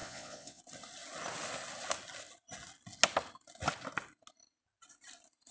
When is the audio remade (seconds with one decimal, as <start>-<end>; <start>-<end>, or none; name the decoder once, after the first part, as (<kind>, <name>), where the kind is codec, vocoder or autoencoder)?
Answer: 0.0-0.6 (vocoder, Vocos)